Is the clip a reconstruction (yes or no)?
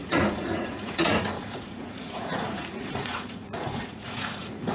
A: yes